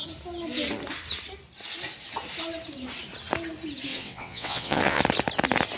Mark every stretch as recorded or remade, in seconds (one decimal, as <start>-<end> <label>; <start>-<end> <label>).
0.0-3.9 recorded; 3.9-5.0 remade; 5.0-5.8 recorded